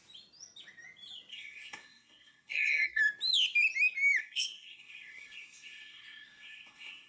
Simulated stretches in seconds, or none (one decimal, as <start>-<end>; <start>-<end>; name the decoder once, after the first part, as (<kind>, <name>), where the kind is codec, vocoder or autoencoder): 1.3-3.0 (codec, SNAC); 4.2-7.1